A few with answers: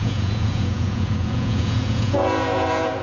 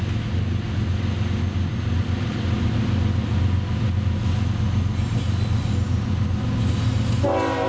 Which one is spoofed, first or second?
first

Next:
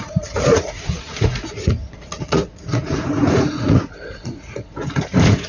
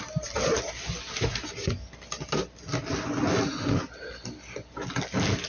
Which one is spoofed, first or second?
first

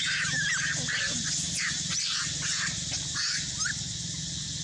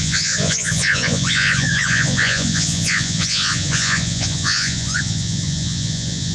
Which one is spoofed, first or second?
second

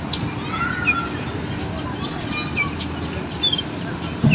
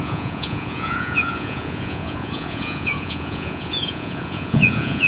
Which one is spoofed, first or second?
second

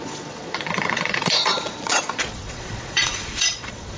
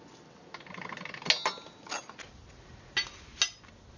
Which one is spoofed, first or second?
first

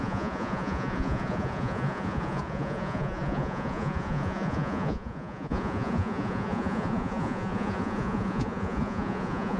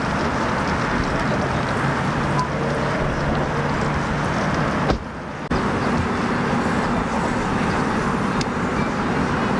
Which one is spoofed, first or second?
first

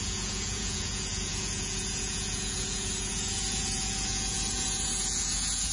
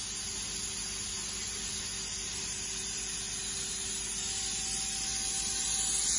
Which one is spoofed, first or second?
first